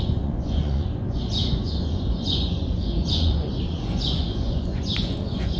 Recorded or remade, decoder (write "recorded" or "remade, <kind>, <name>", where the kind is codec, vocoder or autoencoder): remade, vocoder, Vocos